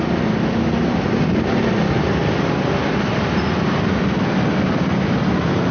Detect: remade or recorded recorded